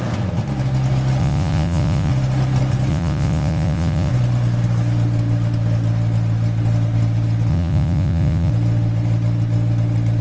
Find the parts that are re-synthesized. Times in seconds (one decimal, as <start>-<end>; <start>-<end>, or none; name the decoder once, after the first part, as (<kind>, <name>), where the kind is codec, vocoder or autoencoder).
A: 1.2-2.1 (vocoder, Vocos); 2.9-4.1; 7.5-8.5